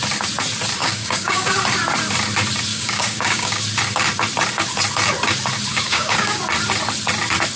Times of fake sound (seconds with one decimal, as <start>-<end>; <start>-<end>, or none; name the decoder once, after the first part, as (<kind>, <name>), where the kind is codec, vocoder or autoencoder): 0.8-1.5 (codec, DAC); 2.7-3.6; 5.7-6.4